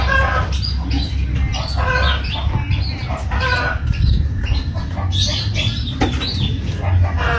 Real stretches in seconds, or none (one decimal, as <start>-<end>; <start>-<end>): 0.0-7.4